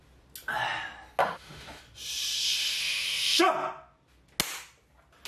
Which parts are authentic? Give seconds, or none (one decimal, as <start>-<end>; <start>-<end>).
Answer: 0.0-1.2; 1.8-2.8; 3.4-5.3